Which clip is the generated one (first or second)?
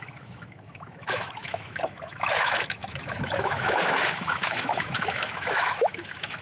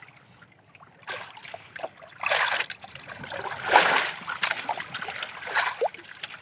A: first